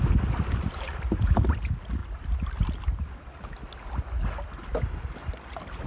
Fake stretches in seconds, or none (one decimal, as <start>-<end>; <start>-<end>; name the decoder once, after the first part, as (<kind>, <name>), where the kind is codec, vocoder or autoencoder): none